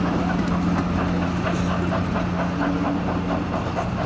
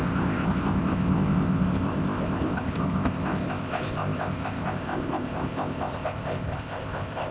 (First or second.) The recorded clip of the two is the first